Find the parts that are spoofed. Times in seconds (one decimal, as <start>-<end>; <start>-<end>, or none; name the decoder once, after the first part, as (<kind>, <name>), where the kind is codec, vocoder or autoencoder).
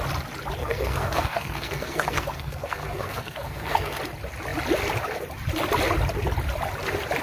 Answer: 0.6-4.0 (codec, SNAC)